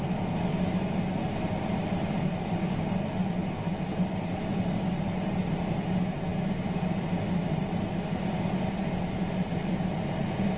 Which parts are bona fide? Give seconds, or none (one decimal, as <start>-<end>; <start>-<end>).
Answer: 0.0-10.6